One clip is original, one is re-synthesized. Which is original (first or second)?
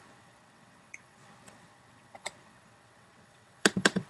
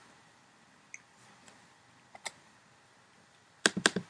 second